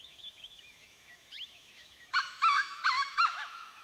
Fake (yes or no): yes